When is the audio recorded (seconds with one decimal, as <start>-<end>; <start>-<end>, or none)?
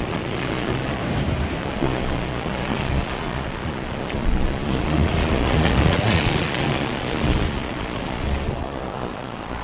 1.0-1.6